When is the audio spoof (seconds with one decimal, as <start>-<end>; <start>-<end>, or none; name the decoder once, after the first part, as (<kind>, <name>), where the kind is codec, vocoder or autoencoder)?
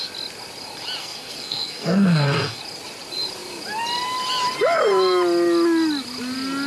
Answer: 1.0-2.6 (codec, SNAC)